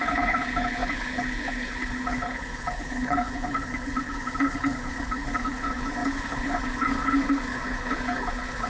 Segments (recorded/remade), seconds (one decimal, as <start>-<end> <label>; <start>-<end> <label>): 0.0-8.7 remade